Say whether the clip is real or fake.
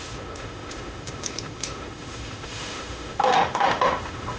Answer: fake